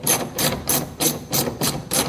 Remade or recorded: remade